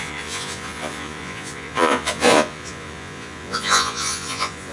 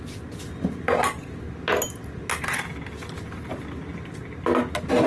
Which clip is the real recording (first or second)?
second